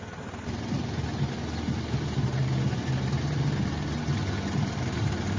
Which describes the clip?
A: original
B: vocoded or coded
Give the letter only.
A